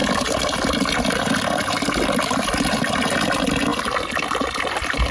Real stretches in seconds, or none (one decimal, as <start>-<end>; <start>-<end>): 0.0-5.1